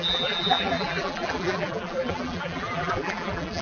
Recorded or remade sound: remade